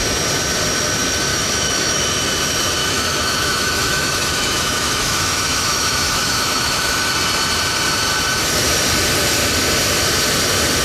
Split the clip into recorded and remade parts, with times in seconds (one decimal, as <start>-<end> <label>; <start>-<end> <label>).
0.0-1.3 recorded; 1.3-2.0 remade; 2.0-2.8 recorded; 2.8-7.1 remade; 7.1-10.8 recorded